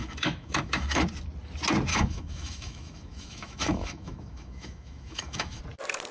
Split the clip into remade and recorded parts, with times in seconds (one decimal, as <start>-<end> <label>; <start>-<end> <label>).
0.0-1.0 remade; 1.0-1.9 recorded; 1.9-5.6 remade; 5.6-6.1 recorded